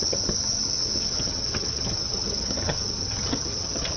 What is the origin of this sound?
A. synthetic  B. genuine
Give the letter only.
A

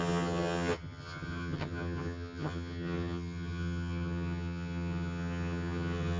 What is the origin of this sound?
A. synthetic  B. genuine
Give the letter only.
A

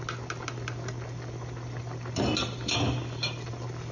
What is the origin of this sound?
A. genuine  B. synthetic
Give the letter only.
A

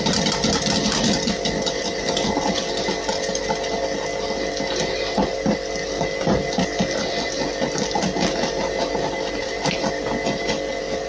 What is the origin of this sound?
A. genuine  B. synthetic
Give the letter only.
A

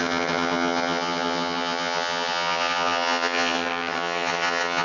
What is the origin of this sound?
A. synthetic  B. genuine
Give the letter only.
A